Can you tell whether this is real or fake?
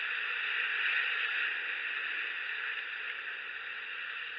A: real